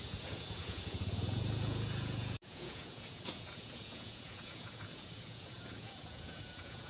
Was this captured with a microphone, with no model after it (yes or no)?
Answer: no